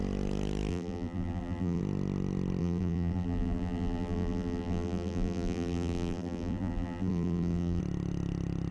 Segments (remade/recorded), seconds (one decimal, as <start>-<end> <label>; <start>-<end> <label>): 0.0-0.7 recorded; 0.7-1.8 remade; 1.8-2.6 recorded; 2.6-7.8 remade; 7.8-8.7 recorded